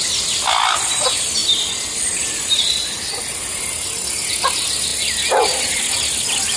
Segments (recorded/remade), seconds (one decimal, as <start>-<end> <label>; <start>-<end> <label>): 0.0-6.6 recorded